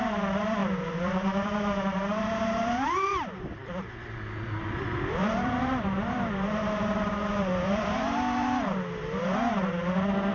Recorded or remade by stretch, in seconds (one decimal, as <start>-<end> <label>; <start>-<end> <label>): 0.0-0.6 recorded; 0.6-3.5 remade; 3.5-5.2 recorded; 5.2-9.7 remade; 9.7-10.3 recorded